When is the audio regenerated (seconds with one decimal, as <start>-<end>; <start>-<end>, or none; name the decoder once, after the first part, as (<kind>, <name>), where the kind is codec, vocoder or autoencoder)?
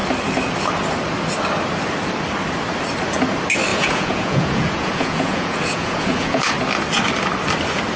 3.7-6.5 (vocoder, Vocos)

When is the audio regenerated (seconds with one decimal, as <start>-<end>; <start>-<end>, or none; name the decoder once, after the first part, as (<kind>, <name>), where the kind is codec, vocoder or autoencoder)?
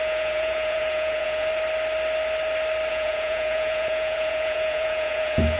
0.0-1.5 (vocoder, Vocos); 2.9-5.6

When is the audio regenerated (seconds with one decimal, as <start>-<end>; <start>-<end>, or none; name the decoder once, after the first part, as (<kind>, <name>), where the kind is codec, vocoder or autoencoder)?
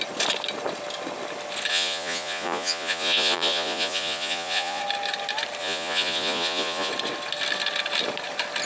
1.7-4.8 (vocoder, Vocos); 5.6-6.9